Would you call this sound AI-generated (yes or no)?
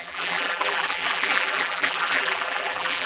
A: yes